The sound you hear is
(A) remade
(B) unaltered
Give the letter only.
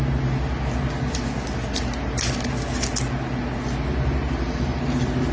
B